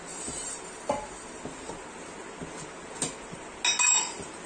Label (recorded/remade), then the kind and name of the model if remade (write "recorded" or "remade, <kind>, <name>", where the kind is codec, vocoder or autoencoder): recorded